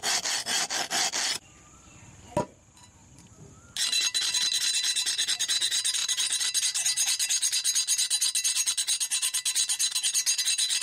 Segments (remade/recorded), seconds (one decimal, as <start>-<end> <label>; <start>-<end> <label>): 0.0-10.8 recorded